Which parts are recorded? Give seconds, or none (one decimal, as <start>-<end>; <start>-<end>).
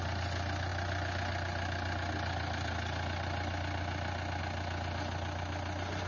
0.0-6.1